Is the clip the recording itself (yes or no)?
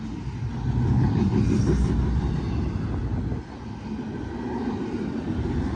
yes